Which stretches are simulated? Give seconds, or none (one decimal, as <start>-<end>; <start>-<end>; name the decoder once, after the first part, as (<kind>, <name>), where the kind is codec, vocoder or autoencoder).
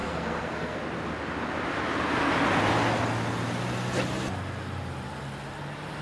0.0-0.8 (codec, SNAC)